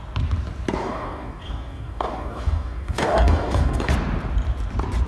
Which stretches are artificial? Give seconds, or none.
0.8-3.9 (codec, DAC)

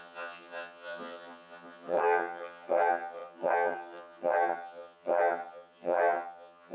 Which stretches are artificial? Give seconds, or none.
0.0-6.7 (vocoder, HiFi-GAN)

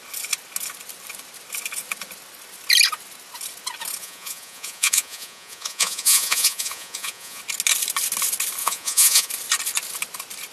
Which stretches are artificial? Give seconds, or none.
4.0-7.4 (vocoder, Vocos); 8.6-9.3

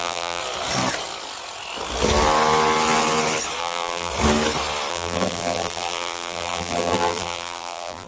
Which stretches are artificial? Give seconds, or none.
0.0-0.4 (vocoder, BigVGAN v2); 3.6-4.1; 4.9-8.1

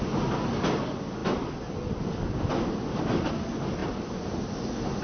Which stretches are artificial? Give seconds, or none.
none

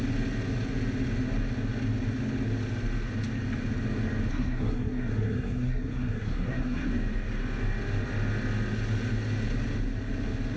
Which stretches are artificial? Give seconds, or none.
4.3-6.9 (codec, SNAC)